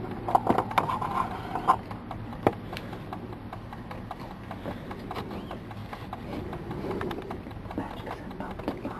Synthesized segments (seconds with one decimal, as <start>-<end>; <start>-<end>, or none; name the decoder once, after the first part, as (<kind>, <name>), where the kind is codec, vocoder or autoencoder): none